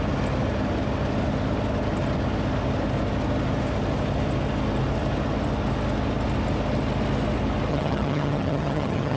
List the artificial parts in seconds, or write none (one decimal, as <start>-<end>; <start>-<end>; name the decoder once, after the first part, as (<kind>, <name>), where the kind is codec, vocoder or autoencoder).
7.7-9.2 (vocoder, HiFi-GAN)

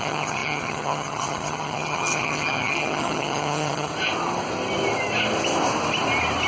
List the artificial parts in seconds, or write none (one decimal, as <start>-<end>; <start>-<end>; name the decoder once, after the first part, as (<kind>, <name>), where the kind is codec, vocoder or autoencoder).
0.0-3.9 (vocoder, HiFi-GAN)